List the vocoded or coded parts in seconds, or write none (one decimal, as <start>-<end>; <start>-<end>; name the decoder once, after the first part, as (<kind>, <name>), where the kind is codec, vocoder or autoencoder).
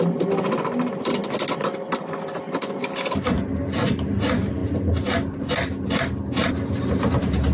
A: none